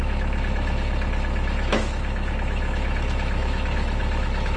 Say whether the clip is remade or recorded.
remade